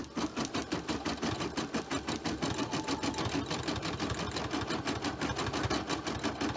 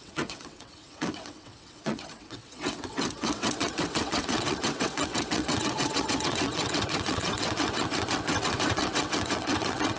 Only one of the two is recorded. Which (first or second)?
first